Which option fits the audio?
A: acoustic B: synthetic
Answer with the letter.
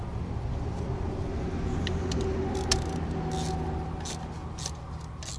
A